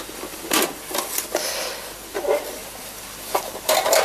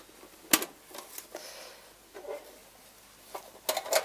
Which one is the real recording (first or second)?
second